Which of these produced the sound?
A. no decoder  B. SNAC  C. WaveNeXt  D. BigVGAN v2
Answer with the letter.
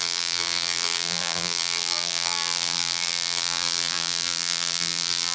D